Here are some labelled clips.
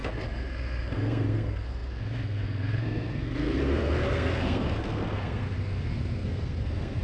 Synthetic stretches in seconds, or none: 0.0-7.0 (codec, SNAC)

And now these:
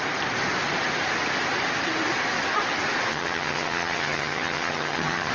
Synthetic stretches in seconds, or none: 3.1-5.3 (vocoder, HiFi-GAN)

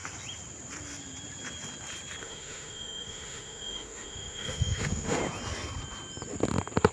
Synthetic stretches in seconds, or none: 2.2-5.2 (autoencoder, DAC-VAE)